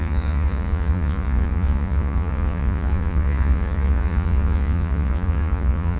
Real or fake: fake